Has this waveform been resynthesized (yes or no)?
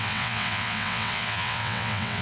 yes